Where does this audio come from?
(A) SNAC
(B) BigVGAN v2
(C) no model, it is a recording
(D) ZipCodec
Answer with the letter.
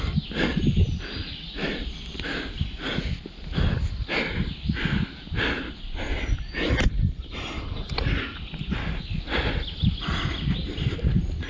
C